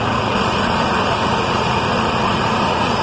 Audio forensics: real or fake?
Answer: fake